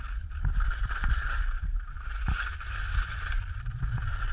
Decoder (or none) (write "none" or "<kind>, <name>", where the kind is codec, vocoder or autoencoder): none